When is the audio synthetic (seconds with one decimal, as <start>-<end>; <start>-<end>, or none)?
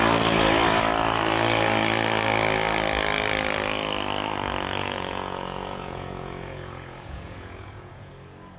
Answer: 4.8-8.1